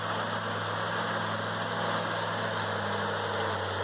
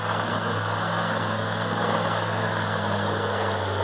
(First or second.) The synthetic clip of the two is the second